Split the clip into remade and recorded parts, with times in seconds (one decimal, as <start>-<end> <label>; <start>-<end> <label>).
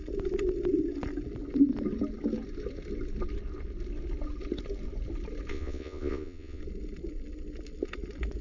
0.0-5.5 recorded; 5.5-6.6 remade; 6.6-8.4 recorded